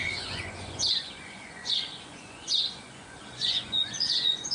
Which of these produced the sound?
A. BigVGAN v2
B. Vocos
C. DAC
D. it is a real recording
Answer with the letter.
B